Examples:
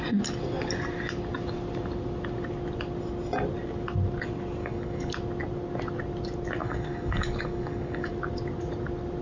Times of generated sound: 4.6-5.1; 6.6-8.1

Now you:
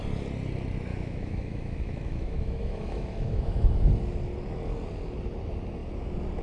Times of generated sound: 0.9-3.9

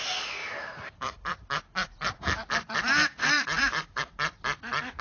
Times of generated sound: 0.4-2.8; 3.2-4.0

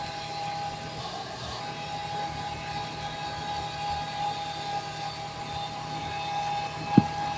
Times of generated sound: 1.0-1.6